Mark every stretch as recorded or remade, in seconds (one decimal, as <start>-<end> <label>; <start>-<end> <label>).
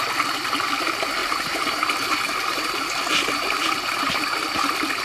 0.0-1.2 recorded; 1.2-4.2 remade; 4.2-5.0 recorded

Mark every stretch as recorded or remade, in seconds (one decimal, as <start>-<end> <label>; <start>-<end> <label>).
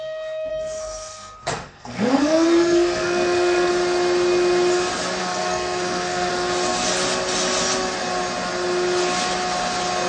0.0-0.5 recorded; 0.5-3.7 remade; 3.7-5.2 recorded; 5.2-6.3 remade; 6.3-10.1 recorded